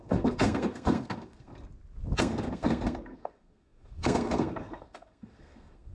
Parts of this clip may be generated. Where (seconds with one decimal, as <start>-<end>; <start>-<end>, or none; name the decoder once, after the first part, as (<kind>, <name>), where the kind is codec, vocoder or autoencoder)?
0.0-1.5 (codec, SNAC); 2.2-5.9

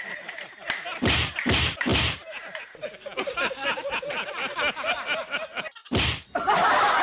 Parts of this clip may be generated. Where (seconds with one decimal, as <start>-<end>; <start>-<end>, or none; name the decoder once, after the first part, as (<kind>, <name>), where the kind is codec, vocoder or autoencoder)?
none

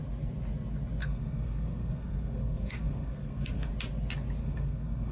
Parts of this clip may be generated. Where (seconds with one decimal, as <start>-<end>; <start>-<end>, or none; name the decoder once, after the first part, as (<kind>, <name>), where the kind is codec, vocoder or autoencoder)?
1.0-3.7 (codec, SNAC); 4.4-5.1

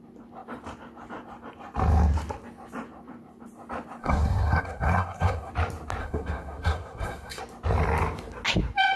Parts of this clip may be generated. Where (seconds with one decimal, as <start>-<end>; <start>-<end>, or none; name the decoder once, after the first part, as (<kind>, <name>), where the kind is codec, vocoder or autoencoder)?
4.0-5.5 (codec, SNAC); 6.0-7.4

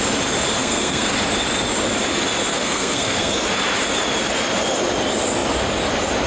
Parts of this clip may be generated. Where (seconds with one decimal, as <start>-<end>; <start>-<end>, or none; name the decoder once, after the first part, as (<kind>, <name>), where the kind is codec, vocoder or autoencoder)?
0.6-1.1 (codec, SNAC); 2.5-3.3

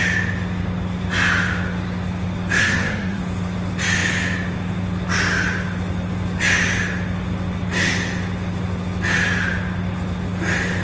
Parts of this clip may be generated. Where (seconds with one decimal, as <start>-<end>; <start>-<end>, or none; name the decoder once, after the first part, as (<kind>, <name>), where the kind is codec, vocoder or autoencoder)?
2.6-3.2 (codec, SNAC)

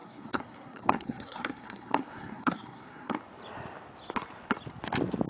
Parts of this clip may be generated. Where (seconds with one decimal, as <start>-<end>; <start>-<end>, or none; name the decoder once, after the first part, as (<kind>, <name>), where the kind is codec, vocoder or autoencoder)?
0.0-3.2 (codec, SNAC)

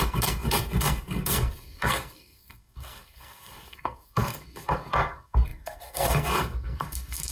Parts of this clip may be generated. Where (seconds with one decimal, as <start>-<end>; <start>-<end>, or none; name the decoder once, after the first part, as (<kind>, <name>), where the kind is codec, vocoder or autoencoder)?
0.0-7.3 (codec, SNAC)